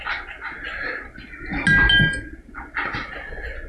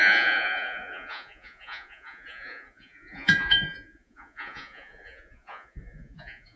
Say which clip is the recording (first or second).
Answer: first